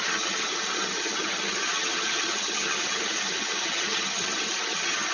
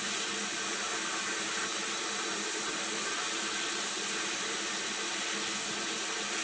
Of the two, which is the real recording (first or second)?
second